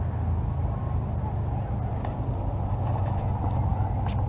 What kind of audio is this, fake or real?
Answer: real